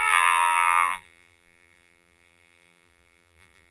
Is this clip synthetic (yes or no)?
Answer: yes